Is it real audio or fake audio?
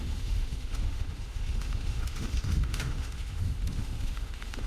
fake